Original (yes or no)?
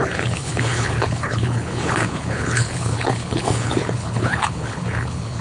no